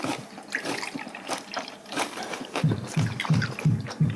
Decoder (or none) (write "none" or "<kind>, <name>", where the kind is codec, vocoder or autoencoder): vocoder, BigVGAN v2